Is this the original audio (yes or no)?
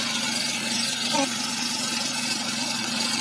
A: no